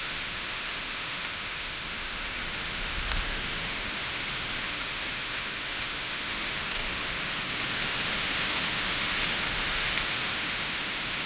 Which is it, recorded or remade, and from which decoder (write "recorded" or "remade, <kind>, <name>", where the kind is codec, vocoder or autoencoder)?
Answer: remade, autoencoder, DAC-VAE